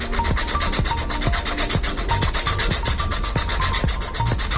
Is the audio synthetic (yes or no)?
no